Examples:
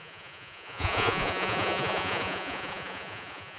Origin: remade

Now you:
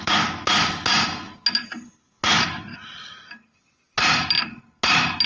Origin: recorded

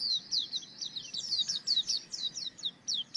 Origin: recorded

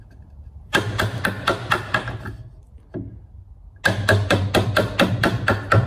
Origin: recorded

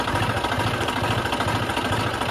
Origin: recorded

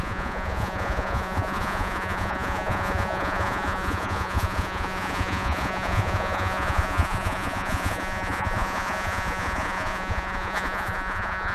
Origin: remade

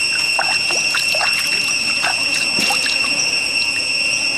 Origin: remade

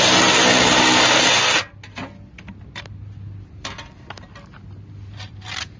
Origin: recorded